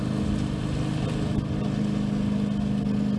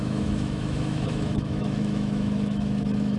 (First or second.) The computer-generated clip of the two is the second